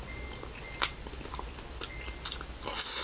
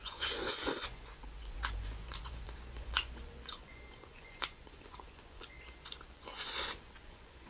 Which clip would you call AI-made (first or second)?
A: second